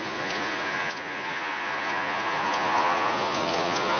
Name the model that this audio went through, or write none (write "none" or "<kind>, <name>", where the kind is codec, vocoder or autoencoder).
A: vocoder, Vocos